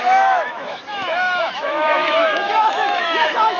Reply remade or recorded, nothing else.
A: remade